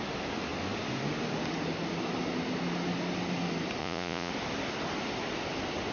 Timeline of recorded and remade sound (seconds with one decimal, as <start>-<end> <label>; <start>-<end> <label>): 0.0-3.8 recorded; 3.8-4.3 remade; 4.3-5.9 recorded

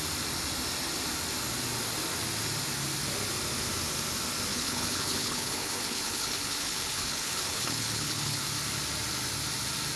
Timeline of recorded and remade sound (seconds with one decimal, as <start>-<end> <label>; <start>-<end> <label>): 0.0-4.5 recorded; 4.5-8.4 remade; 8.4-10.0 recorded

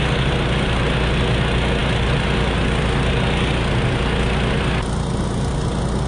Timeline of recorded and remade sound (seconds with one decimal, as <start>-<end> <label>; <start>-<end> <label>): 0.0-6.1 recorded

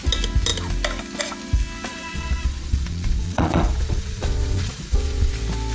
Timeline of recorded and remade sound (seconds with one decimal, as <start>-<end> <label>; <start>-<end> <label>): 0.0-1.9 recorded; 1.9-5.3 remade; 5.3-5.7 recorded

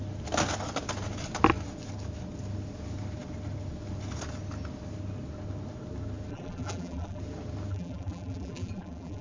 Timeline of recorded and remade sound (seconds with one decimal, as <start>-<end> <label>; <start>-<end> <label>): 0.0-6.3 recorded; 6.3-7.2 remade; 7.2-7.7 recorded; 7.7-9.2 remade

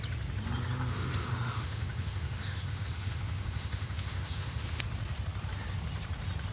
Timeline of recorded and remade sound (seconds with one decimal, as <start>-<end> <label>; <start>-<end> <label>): 0.0-0.9 recorded; 0.9-4.8 remade; 4.8-6.5 recorded